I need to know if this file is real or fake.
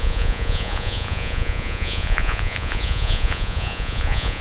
fake